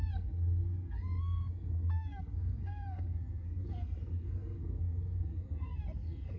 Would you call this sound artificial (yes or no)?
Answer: yes